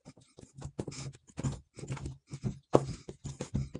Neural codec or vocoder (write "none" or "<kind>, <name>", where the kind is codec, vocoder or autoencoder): none